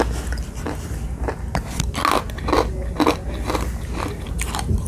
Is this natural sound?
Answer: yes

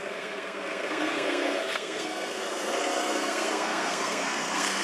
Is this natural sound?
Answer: no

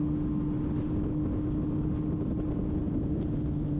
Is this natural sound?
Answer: yes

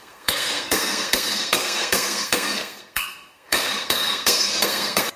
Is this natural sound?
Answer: no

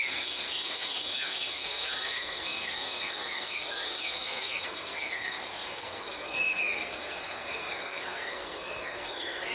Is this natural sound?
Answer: no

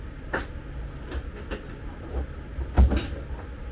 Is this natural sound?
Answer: yes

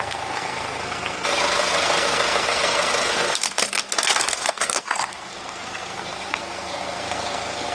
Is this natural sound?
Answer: no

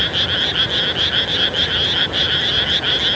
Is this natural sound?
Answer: yes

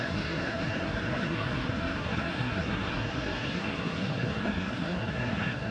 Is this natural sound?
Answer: no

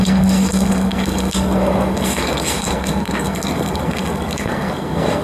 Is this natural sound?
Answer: no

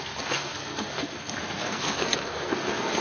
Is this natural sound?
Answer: no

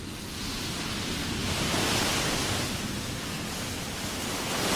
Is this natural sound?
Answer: yes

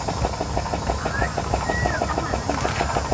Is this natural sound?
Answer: yes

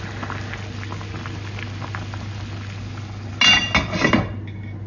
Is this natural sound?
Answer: yes